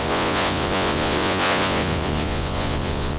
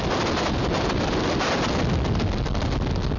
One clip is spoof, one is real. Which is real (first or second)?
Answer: second